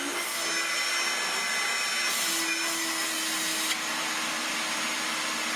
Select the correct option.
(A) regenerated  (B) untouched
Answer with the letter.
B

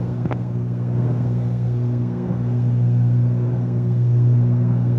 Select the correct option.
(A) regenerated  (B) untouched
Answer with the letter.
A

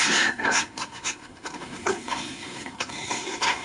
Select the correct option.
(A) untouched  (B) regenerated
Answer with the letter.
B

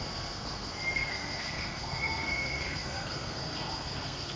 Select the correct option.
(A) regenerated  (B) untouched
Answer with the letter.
A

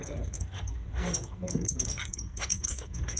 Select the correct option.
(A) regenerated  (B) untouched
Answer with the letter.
A